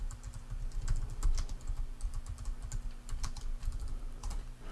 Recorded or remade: recorded